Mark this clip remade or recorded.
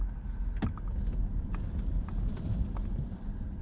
recorded